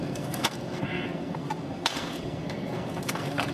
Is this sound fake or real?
fake